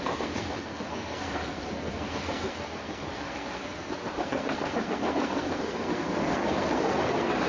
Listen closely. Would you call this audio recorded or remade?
remade